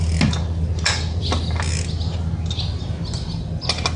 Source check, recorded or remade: recorded